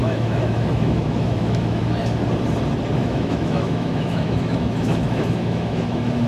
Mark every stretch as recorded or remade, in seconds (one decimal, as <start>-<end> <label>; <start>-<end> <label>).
0.0-1.8 remade; 1.8-3.0 recorded; 3.0-6.3 remade